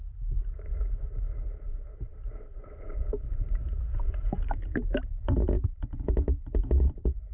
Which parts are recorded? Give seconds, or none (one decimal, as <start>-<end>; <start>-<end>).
none